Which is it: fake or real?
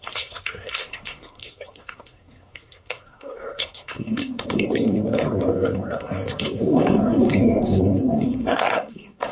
fake